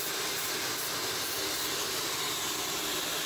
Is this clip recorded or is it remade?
recorded